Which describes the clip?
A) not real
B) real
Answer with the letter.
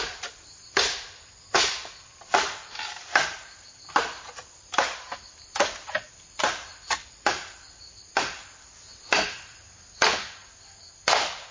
A